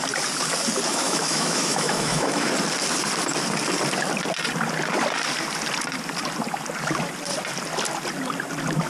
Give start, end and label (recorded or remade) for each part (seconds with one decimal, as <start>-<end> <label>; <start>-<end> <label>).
0.0-0.9 recorded; 0.9-2.5 remade; 2.5-8.9 recorded